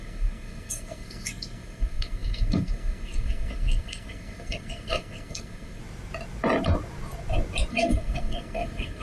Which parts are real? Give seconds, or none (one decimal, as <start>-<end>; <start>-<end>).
5.8-7.7